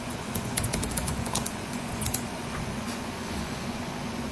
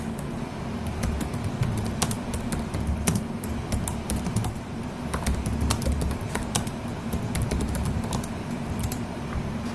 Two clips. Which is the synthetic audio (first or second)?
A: first